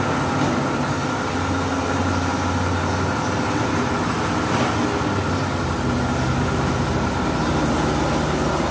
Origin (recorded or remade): recorded